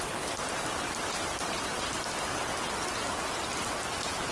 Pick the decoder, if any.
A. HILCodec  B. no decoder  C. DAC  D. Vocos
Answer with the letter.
B